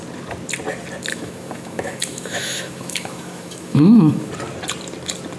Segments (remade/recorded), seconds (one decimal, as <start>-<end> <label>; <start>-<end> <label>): 0.0-1.1 recorded; 1.1-4.3 remade; 4.3-5.4 recorded